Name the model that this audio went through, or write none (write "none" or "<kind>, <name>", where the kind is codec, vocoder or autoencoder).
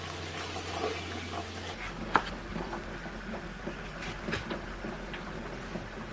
none